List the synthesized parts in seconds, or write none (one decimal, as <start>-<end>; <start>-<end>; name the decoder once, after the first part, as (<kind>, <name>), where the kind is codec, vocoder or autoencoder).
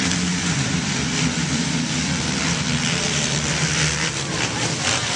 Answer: 0.4-3.5 (vocoder, BigVGAN v2)